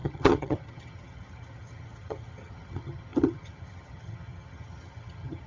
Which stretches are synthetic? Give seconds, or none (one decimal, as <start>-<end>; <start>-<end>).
0.0-5.5